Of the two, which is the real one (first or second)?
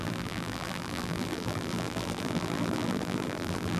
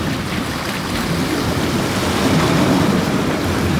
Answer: second